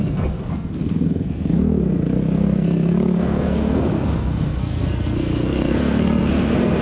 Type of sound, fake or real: fake